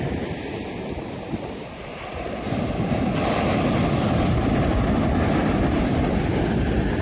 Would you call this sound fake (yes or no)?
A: no